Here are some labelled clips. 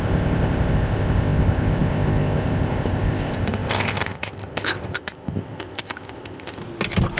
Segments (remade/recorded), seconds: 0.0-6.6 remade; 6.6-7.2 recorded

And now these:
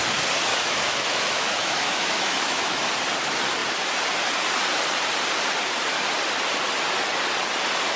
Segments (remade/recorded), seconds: 0.0-0.5 recorded; 0.5-2.8 remade; 2.8-8.0 recorded